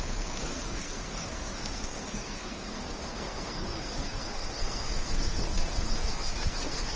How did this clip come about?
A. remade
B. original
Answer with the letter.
A